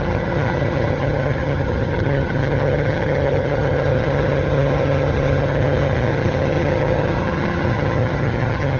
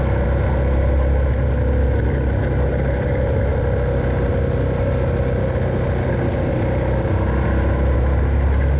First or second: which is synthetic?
first